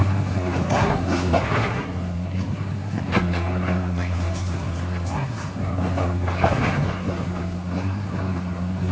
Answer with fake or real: fake